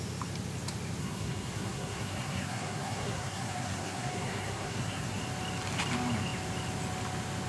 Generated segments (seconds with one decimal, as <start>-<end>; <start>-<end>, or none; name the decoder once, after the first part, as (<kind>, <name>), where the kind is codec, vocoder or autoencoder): 1.0-5.2 (codec, SNAC)